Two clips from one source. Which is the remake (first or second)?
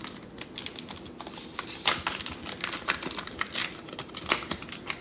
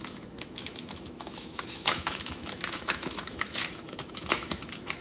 second